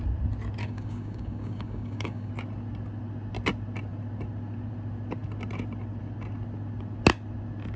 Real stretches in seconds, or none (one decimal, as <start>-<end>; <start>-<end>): 0.0-0.6; 2.3-7.8